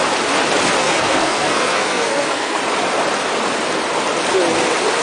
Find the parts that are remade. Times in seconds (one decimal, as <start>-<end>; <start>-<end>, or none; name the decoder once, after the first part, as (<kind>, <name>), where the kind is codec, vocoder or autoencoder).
0.8-2.6 (codec, SNAC)